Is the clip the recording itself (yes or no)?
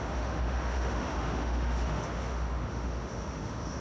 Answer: no